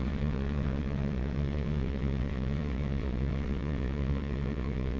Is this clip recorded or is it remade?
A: remade